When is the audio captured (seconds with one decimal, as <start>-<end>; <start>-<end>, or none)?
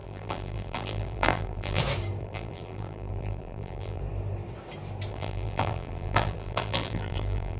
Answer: 1.8-2.2; 4.0-5.1